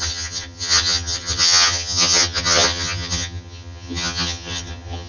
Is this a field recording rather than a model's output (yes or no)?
no